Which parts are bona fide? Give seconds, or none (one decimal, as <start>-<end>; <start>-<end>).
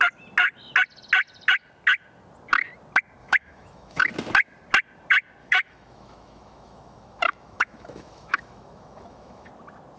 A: 0.0-3.2; 4.1-5.4; 9.5-10.0